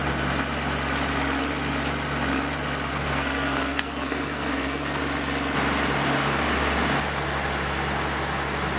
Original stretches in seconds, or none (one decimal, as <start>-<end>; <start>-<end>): 0.0-2.9; 5.0-8.8